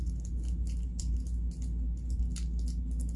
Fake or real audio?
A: real